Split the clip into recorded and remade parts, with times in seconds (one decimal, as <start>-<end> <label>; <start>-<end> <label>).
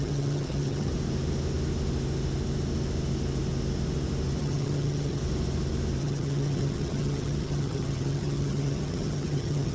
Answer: 0.0-0.9 remade; 0.9-4.4 recorded; 4.4-5.2 remade; 5.2-6.0 recorded; 6.0-9.7 remade